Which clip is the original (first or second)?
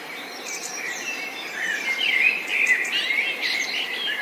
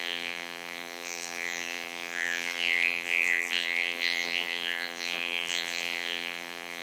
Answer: first